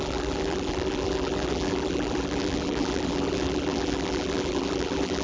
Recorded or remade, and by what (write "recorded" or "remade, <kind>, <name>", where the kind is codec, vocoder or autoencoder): remade, vocoder, BigVGAN v2